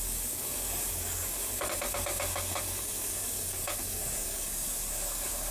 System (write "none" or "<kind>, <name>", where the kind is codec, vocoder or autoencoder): codec, DAC